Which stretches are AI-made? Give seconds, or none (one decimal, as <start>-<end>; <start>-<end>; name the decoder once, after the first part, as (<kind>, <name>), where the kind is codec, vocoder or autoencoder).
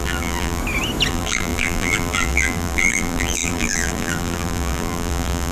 0.0-0.6 (vocoder, BigVGAN v2); 1.1-5.5